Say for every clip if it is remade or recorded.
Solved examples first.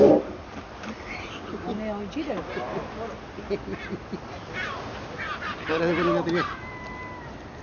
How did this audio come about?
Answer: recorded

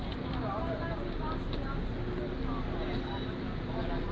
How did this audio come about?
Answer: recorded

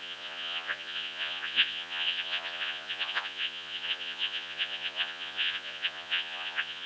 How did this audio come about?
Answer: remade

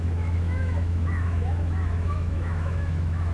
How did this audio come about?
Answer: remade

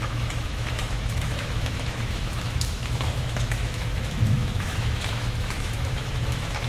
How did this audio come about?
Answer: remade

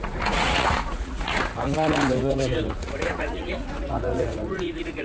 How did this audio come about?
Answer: remade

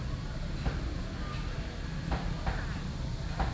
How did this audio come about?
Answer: recorded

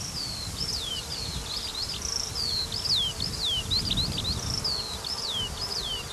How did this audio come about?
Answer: recorded